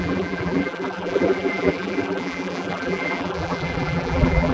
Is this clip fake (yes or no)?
yes